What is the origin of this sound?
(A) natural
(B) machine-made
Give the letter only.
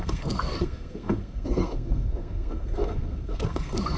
B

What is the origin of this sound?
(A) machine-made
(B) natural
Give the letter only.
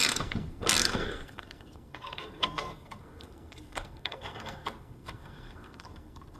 A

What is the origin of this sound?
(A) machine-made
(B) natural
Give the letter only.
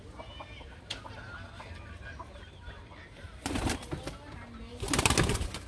B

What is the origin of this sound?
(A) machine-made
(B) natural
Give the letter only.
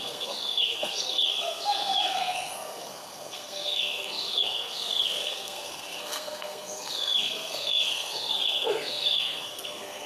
A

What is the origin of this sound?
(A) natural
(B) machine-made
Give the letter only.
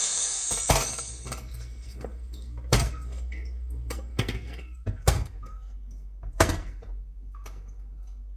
B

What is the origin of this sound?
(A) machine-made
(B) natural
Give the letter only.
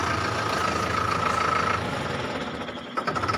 B